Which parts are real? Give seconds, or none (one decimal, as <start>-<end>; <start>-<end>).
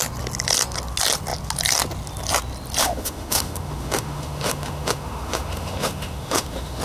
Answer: 0.0-2.8